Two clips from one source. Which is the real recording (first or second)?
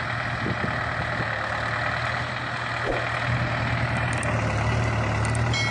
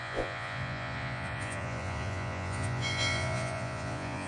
first